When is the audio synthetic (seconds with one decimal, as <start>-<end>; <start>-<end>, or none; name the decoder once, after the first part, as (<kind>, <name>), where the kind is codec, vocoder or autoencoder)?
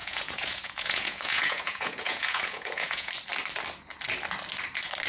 0.0-3.1 (vocoder, Vocos)